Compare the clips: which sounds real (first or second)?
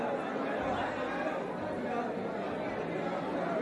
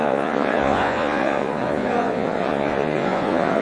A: first